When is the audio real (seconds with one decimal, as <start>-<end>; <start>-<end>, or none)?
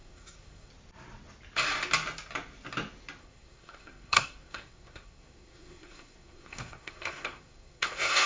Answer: 0.7-3.2